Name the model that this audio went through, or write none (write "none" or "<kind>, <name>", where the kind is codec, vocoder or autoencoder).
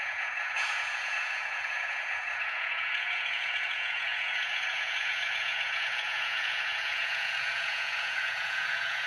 vocoder, Vocos